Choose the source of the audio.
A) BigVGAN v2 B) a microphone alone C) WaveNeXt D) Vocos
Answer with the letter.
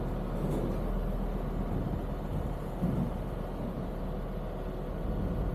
B